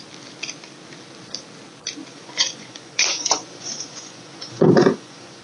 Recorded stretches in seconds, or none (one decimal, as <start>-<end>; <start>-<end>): 0.0-2.1